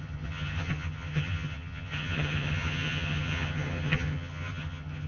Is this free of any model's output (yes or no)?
no